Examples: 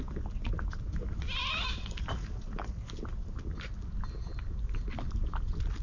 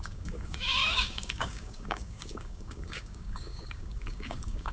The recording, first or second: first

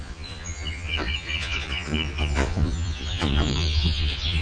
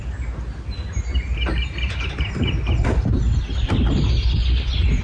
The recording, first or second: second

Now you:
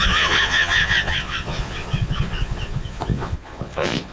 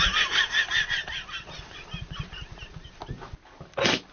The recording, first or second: second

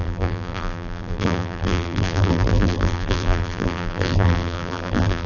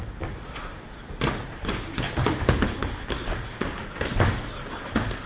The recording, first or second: second